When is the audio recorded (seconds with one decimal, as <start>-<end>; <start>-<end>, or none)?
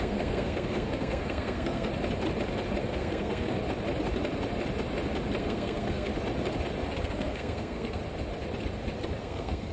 1.9-2.8; 3.6-5.4; 6.1-7.0; 8.0-9.2